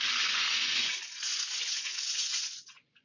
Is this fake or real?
fake